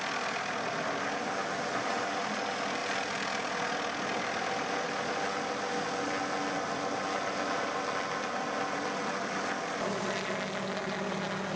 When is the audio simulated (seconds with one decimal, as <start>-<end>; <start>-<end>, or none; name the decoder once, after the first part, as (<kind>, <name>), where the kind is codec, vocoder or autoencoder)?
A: none